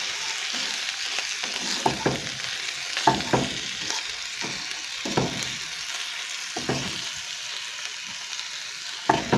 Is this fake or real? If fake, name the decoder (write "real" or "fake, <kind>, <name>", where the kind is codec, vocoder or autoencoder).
real